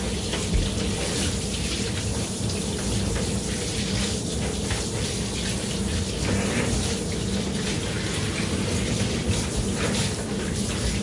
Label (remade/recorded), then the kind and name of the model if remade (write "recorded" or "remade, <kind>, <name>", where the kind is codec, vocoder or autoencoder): recorded